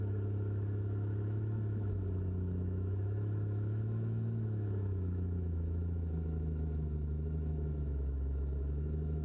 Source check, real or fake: fake